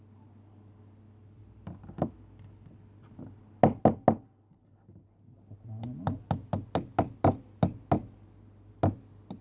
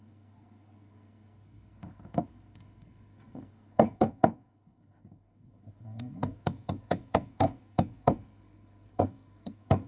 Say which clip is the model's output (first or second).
second